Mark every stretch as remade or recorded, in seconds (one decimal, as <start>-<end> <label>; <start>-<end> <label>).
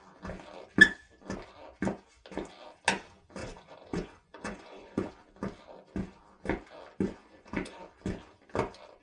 0.0-3.4 recorded; 3.4-5.1 remade; 5.1-7.2 recorded; 7.2-7.8 remade; 7.8-9.0 recorded